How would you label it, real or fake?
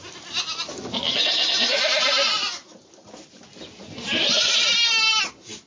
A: real